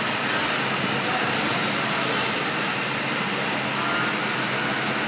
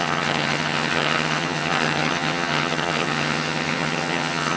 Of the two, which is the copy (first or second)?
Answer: second